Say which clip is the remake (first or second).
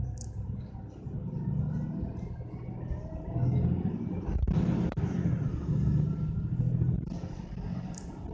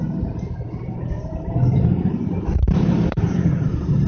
second